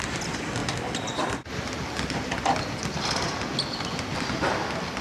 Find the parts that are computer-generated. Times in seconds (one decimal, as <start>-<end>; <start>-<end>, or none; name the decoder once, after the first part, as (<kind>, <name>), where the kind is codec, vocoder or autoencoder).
none